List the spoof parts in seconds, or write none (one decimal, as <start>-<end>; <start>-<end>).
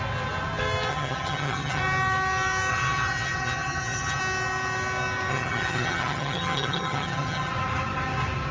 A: 0.9-1.8; 2.7-4.2; 5.3-7.5